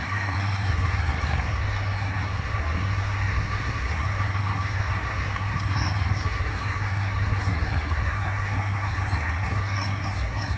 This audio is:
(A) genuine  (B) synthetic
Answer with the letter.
B